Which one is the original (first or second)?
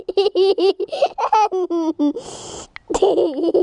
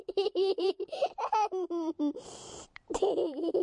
first